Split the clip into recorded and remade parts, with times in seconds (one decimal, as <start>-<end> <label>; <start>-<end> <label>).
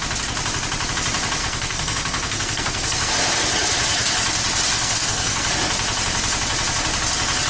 0.0-1.4 recorded; 1.4-3.1 remade; 3.1-4.7 recorded; 4.7-5.5 remade; 5.5-7.5 recorded